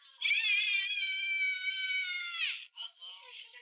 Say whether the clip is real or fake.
real